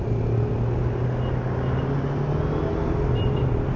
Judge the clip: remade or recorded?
recorded